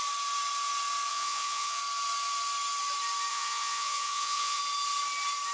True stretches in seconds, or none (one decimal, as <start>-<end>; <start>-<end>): 0.0-1.1; 1.8-3.3; 4.6-5.5